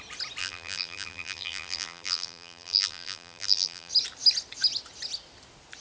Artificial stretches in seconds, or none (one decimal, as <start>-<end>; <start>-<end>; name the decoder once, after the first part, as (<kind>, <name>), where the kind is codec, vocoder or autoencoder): 0.4-3.9 (vocoder, BigVGAN v2)